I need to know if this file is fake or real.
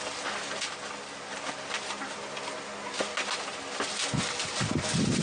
real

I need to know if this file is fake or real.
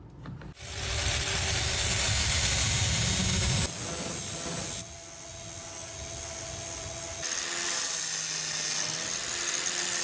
real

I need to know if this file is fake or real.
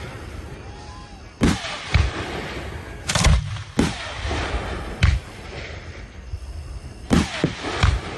real